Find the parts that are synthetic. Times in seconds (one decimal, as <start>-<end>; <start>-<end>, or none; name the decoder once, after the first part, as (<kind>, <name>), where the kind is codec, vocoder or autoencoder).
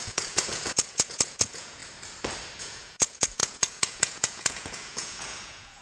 0.0-1.8 (vocoder, Vocos); 2.6-5.8